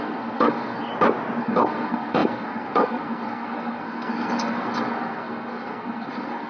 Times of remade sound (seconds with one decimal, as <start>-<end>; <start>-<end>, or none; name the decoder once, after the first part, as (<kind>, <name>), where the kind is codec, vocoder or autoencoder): 0.0-0.9 (codec, SNAC); 1.4-6.5